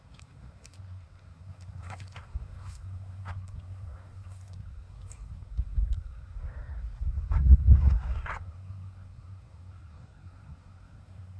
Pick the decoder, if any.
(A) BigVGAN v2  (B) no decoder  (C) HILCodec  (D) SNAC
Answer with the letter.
D